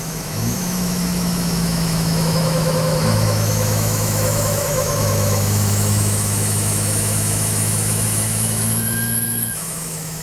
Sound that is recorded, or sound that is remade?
remade